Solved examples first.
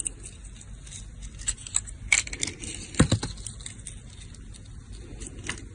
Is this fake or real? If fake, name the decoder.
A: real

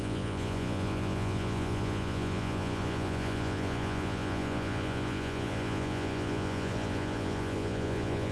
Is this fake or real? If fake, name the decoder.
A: fake, vocoder, Vocos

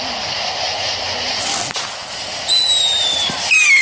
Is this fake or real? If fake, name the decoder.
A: real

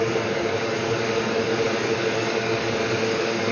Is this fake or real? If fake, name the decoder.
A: fake, codec, DAC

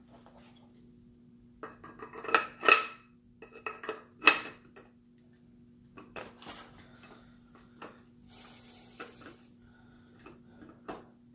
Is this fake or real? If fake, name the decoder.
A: real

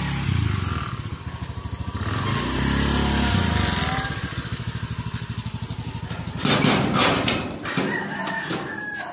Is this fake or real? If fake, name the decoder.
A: real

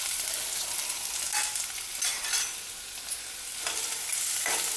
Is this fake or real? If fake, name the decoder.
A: real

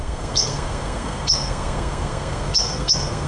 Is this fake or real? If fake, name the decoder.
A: fake, codec, SNAC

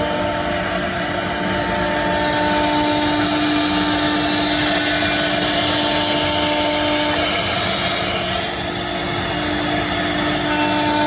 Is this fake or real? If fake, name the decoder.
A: real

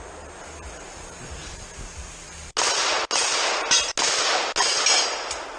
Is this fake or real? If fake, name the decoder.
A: real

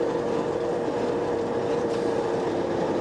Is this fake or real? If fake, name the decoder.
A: fake, vocoder, BigVGAN v2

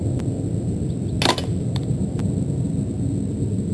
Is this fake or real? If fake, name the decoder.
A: real